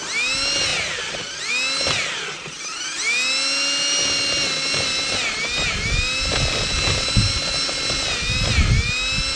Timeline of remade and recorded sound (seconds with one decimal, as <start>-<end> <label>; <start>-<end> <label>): 0.0-0.7 recorded; 0.7-1.5 remade; 1.5-6.2 recorded; 6.2-7.5 remade; 7.5-9.4 recorded